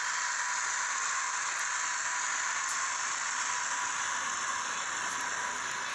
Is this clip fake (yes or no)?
no